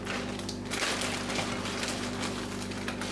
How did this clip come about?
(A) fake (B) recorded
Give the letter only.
B